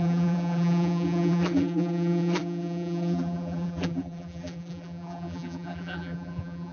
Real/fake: fake